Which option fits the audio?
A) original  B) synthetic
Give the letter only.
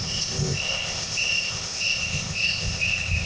B